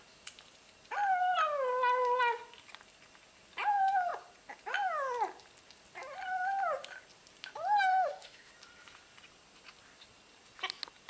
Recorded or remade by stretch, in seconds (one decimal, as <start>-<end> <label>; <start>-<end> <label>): 0.0-7.9 recorded; 7.9-8.5 remade; 8.5-11.1 recorded